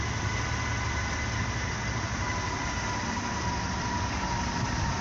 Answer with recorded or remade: recorded